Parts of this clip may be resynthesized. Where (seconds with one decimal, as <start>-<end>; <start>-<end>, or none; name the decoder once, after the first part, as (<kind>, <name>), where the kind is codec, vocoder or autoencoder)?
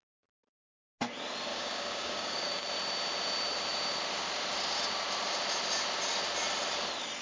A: 1.5-2.6 (codec, DAC)